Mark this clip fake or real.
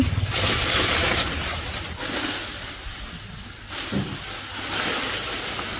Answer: real